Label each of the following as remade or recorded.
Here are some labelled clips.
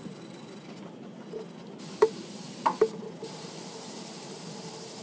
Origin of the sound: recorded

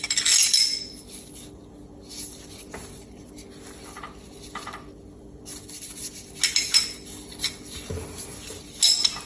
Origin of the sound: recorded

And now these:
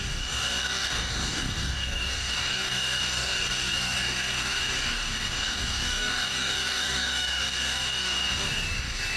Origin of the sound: remade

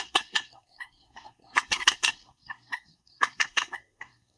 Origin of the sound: remade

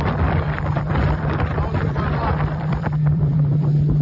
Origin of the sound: remade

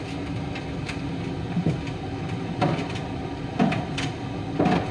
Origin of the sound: recorded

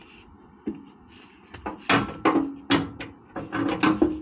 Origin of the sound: recorded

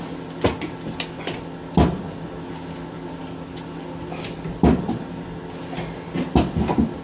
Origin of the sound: recorded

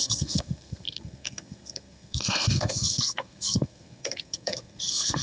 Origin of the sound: remade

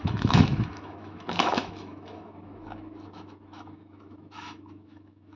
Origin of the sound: remade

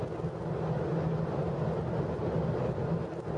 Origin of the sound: recorded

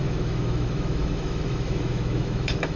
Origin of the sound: remade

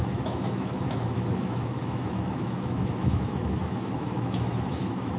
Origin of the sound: remade